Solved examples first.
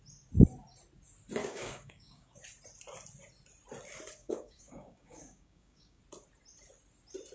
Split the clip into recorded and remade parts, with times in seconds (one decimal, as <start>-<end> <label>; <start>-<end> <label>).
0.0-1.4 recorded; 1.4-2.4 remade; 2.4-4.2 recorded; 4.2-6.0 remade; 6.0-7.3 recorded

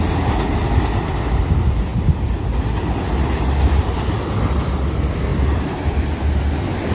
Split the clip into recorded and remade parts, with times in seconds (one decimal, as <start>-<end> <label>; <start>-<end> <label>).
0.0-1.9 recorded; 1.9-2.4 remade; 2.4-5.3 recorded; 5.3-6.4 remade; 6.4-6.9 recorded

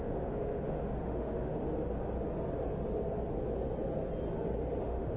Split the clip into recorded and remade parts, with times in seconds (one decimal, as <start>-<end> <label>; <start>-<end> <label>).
0.0-1.7 remade; 1.7-4.8 recorded; 4.8-5.2 remade

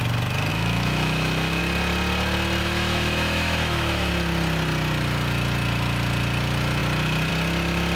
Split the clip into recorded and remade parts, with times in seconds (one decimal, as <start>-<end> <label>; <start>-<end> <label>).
0.0-0.5 recorded; 0.5-1.6 remade; 1.6-2.6 recorded; 2.6-4.1 remade; 4.1-8.0 recorded

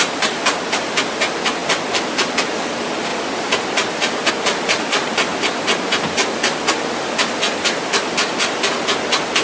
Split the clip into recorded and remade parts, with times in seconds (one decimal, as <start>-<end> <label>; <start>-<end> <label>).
0.0-9.4 recorded

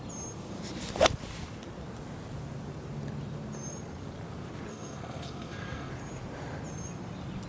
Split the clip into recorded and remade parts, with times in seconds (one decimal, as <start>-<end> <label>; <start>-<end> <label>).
0.0-4.7 recorded; 4.7-5.9 remade; 5.9-7.5 recorded